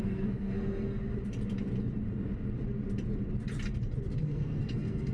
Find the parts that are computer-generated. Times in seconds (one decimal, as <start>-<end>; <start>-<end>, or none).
0.0-1.0; 4.1-5.1